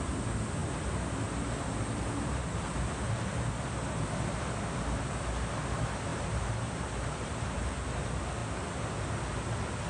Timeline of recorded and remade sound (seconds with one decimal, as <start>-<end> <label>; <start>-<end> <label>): 0.0-6.1 recorded; 6.1-7.9 remade; 7.9-9.9 recorded